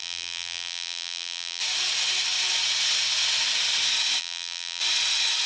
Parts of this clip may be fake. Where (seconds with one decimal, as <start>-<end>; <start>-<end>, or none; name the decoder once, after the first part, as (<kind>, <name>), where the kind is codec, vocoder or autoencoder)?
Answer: 0.0-1.6 (vocoder, BigVGAN v2); 4.2-4.8